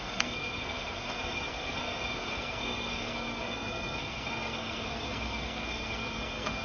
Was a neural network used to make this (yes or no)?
yes